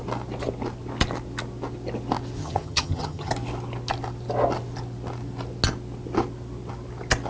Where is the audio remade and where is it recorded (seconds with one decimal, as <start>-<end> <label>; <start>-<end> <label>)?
0.0-2.4 recorded; 2.4-3.3 remade; 3.3-7.3 recorded